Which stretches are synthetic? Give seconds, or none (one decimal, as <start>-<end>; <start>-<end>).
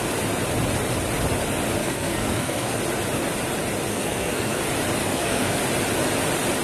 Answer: 1.8-2.8; 3.9-4.6; 5.0-5.6